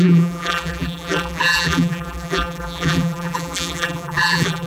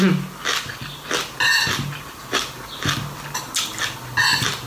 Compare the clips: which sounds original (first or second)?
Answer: second